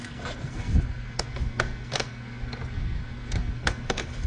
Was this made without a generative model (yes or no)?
no